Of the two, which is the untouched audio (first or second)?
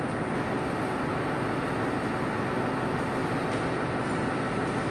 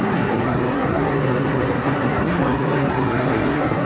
first